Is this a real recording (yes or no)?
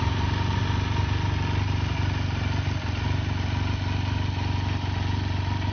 yes